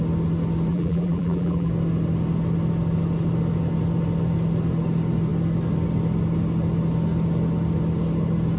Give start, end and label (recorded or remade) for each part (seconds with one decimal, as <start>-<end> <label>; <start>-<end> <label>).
0.0-0.7 recorded; 0.7-1.7 remade; 1.7-8.6 recorded